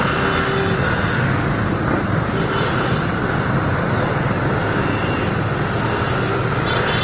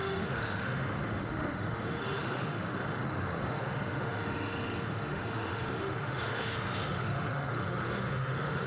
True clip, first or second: first